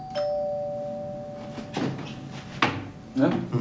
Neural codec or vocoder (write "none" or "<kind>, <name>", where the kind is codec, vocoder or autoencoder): none